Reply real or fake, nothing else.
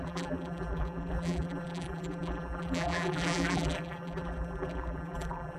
fake